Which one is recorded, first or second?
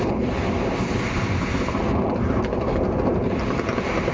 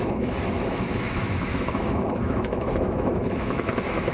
first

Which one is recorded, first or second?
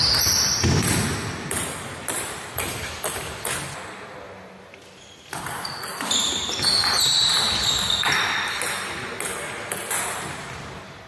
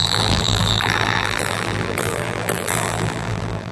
first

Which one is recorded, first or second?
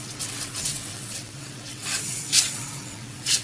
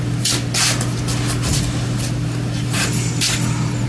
second